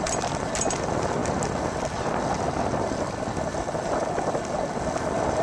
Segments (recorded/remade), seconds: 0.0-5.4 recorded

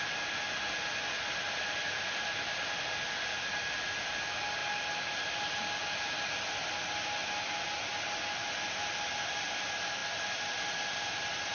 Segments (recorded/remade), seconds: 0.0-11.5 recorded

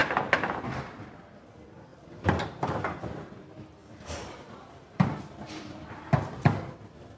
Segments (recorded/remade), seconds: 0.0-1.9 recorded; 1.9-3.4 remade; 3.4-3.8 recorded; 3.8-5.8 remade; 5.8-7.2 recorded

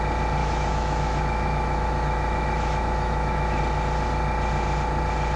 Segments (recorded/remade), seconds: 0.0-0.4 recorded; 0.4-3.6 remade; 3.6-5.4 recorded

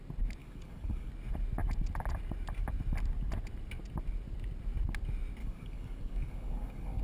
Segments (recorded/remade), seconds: 0.0-0.4 recorded; 0.4-1.1 remade; 1.1-5.4 recorded; 5.4-7.0 remade

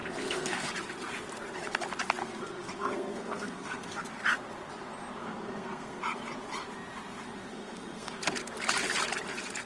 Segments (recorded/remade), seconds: 0.0-0.7 remade; 0.7-2.2 recorded; 2.2-4.0 remade; 4.0-5.2 recorded; 5.2-6.0 remade; 6.0-7.5 recorded; 7.5-8.2 remade; 8.2-9.7 recorded

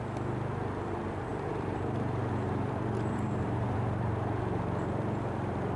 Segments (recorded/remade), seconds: 0.0-1.3 recorded; 1.3-4.4 remade; 4.4-5.8 recorded